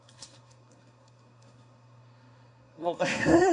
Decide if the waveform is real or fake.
fake